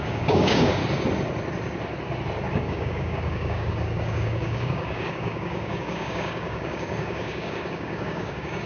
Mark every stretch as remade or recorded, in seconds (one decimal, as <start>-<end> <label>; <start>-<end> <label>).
0.0-0.8 remade; 0.8-2.5 recorded; 2.5-8.7 remade